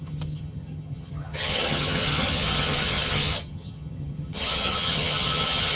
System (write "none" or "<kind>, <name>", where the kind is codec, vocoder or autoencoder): vocoder, HiFi-GAN